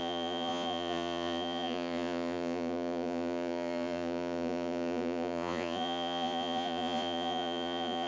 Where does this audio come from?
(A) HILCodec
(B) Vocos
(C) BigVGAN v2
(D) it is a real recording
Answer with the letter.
B